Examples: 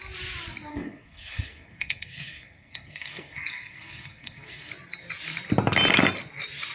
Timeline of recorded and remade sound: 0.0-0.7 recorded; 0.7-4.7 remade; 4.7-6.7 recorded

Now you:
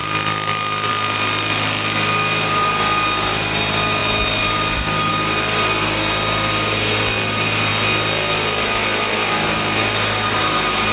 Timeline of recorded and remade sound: 0.0-10.9 recorded

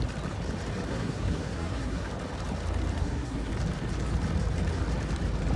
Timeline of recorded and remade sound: 0.0-0.9 recorded; 0.9-2.1 remade; 2.1-3.0 recorded; 3.0-3.5 remade; 3.5-5.6 recorded

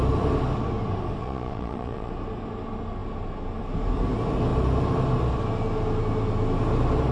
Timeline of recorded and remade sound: 0.0-1.2 recorded; 1.2-2.1 remade; 2.1-7.1 recorded

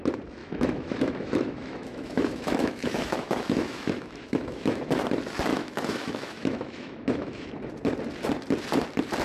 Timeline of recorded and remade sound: 0.0-0.4 recorded; 0.4-4.9 remade; 4.9-5.5 recorded; 5.5-7.5 remade; 7.5-9.2 recorded

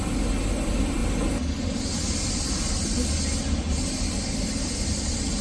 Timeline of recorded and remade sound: 0.0-5.4 recorded